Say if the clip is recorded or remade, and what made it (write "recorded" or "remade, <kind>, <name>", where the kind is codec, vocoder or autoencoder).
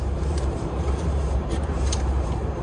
remade, vocoder, BigVGAN v2